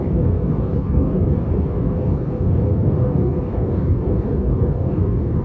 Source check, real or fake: fake